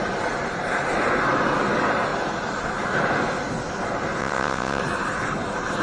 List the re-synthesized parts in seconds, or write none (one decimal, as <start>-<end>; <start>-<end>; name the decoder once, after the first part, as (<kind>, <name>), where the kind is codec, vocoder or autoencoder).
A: 4.2-4.8 (vocoder, WaveNeXt)